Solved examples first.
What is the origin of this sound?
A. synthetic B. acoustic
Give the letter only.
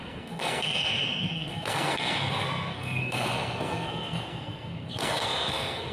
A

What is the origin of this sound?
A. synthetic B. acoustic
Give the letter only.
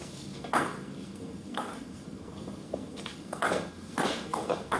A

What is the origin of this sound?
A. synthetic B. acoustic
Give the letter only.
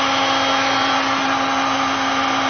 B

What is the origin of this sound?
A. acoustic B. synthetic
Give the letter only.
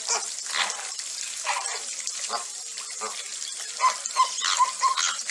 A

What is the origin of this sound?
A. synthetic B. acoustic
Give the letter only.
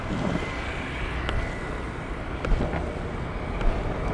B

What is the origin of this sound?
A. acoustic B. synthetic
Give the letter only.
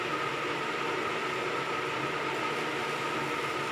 A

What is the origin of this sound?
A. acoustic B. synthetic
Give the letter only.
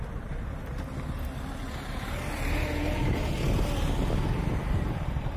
A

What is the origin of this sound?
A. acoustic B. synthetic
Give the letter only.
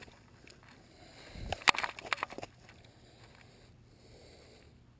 A